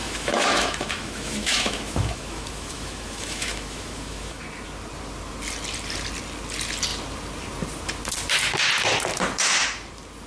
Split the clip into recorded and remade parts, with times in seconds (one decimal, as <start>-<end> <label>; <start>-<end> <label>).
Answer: 0.0-4.4 remade; 4.4-10.3 recorded